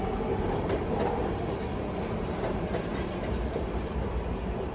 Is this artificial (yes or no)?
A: yes